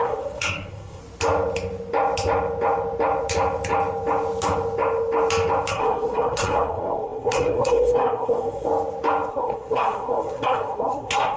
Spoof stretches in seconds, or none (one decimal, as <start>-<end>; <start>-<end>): 0.0-1.0; 5.7-8.7; 9.3-11.4